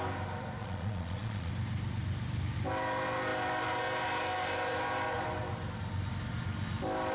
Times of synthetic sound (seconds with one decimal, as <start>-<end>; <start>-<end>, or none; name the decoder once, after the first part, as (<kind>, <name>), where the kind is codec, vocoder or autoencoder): 0.6-1.5 (vocoder, Vocos)